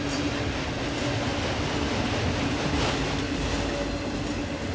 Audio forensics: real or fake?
real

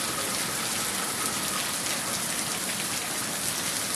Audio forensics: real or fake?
real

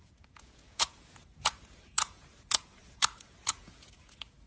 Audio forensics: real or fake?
fake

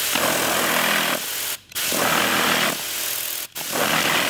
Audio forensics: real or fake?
real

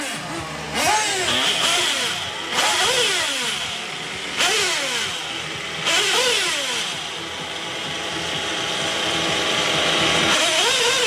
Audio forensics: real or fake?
real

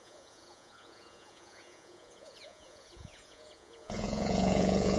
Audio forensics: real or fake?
fake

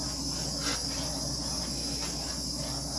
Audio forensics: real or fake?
real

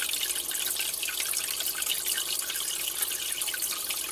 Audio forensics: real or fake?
real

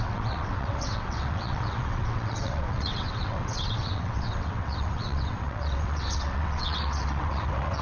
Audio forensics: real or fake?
fake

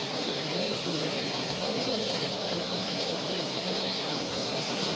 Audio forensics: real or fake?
fake